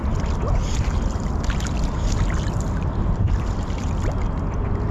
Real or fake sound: real